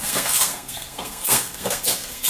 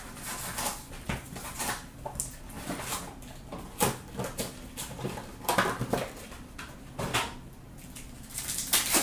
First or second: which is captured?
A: second